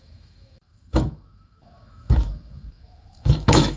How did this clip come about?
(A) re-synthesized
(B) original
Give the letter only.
A